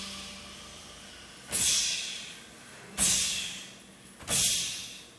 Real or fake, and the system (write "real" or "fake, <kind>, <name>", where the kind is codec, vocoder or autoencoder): real